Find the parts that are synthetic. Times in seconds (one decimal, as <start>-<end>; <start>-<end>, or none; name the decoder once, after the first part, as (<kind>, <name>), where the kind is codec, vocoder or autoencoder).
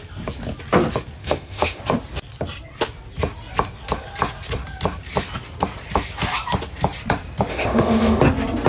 1.2-1.8 (autoencoder, DAC-VAE); 7.5-8.2